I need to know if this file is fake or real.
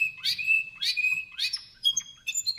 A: fake